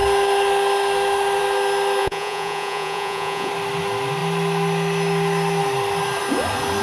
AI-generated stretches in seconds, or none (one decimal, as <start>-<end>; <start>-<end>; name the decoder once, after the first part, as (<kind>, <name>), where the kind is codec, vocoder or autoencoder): 2.0-3.5 (vocoder, Vocos)